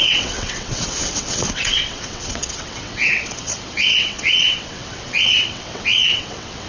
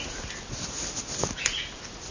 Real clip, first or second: second